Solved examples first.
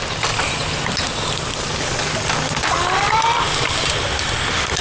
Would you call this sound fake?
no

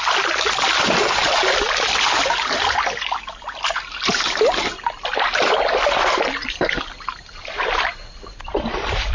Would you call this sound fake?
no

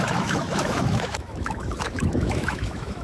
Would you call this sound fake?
yes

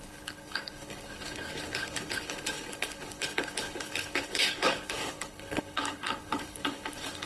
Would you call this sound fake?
yes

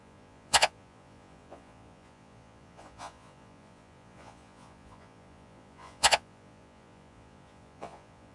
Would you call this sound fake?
yes